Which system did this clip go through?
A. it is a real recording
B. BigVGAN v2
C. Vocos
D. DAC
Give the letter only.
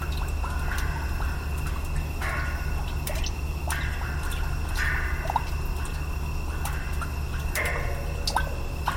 A